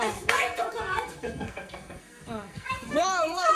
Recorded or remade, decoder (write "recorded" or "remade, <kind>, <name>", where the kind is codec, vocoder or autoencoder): remade, codec, SNAC